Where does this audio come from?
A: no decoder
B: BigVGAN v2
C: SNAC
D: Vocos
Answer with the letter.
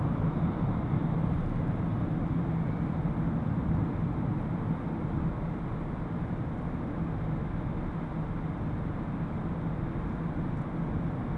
A